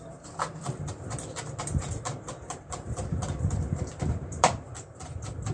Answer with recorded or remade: remade